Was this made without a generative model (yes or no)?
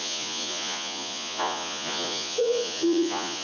no